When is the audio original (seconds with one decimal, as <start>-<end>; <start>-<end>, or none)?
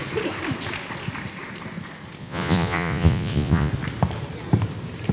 0.0-2.2; 3.7-5.1